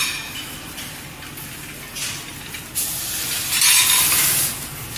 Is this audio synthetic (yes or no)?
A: no